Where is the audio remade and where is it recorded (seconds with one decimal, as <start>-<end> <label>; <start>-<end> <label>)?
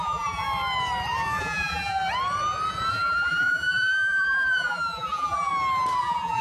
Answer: 0.0-0.4 remade; 0.4-1.4 recorded; 1.4-2.0 remade; 2.0-2.9 recorded; 2.9-5.5 remade; 5.5-6.0 recorded; 6.0-6.4 remade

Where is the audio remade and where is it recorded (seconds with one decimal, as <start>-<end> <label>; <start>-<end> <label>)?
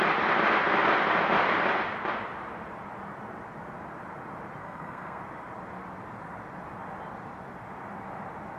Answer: 0.0-4.6 recorded; 4.6-5.2 remade; 5.2-8.6 recorded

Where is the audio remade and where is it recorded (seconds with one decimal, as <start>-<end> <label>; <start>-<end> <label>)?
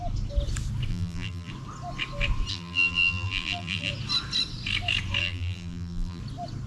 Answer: 0.0-0.9 recorded; 0.9-1.5 remade; 1.5-2.5 recorded; 2.5-3.9 remade; 3.9-5.2 recorded; 5.2-6.2 remade; 6.2-6.7 recorded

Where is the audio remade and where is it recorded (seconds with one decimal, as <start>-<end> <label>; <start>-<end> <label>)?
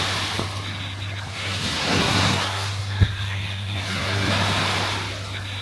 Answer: 0.0-1.3 recorded; 1.3-4.3 remade; 4.3-5.6 recorded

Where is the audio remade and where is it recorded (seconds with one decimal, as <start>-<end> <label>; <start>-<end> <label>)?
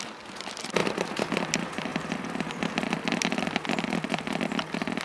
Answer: 0.0-5.0 recorded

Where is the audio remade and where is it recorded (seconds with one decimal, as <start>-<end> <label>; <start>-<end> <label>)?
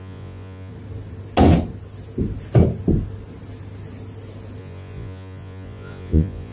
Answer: 0.0-0.7 remade; 0.7-4.6 recorded; 4.6-6.5 remade